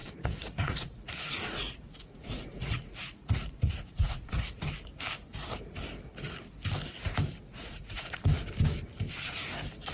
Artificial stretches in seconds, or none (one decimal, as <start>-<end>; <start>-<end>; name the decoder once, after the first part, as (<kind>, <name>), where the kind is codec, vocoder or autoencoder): 0.0-4.6 (vocoder, Vocos); 7.5-8.2